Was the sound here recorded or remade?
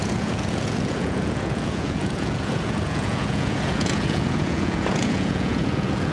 remade